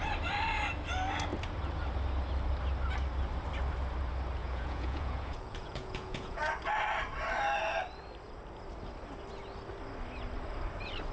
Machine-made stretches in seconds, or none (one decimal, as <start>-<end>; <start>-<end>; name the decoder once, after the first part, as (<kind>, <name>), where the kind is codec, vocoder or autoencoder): 4.4-6.4 (vocoder, Vocos)